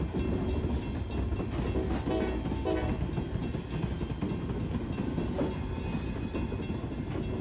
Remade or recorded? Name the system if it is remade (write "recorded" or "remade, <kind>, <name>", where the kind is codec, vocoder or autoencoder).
recorded